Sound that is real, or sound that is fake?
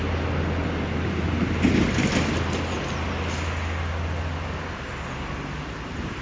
real